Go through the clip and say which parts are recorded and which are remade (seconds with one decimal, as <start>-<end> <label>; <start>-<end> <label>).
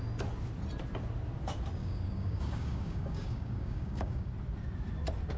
0.0-1.8 recorded; 1.8-4.3 remade; 4.3-5.4 recorded